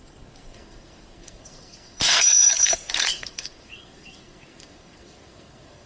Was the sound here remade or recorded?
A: remade